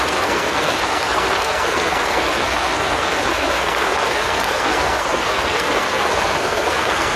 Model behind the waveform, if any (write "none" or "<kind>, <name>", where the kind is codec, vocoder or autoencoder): codec, SNAC